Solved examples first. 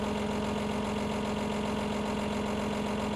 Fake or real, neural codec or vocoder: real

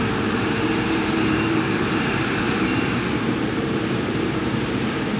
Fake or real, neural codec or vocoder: fake, vocoder, BigVGAN v2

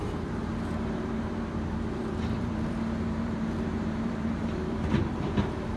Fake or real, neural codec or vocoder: fake, vocoder, BigVGAN v2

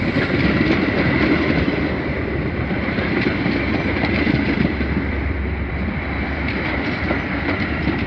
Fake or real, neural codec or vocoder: fake, vocoder, BigVGAN v2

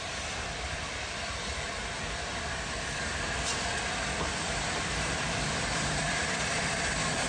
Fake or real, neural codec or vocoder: fake, vocoder, BigVGAN v2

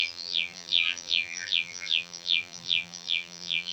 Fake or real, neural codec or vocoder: fake, vocoder, BigVGAN v2